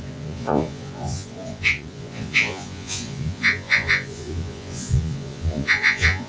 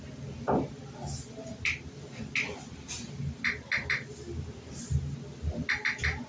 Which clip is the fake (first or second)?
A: first